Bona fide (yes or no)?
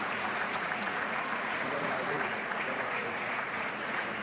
no